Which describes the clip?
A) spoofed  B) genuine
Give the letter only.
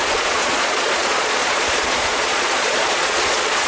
A